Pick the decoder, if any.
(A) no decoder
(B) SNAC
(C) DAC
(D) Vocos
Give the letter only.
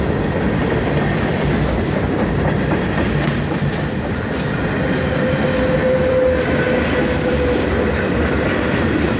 A